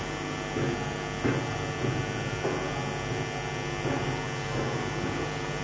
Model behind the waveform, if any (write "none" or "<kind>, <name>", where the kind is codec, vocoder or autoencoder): none